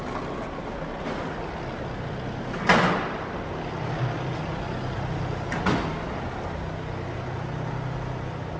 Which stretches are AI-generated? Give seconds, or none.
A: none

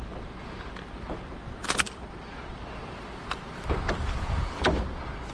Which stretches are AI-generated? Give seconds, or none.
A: 1.6-4.8 (vocoder, BigVGAN v2)

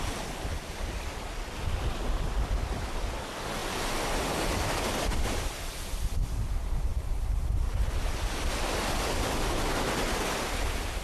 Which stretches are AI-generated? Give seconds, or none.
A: none

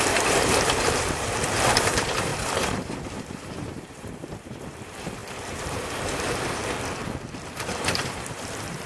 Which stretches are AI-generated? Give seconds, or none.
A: 0.0-6.6 (vocoder, BigVGAN v2); 7.5-8.9

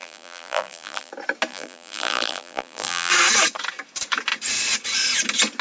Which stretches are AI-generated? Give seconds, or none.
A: 0.0-1.1 (vocoder, BigVGAN v2); 1.5-3.1

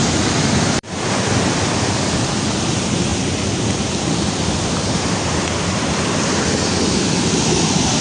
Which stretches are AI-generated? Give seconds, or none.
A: 0.0-8.0 (vocoder, BigVGAN v2)

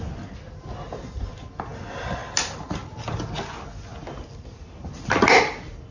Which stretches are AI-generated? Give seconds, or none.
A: none

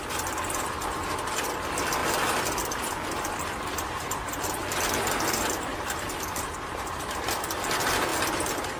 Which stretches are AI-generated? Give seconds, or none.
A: 5.7-7.5 (vocoder, BigVGAN v2)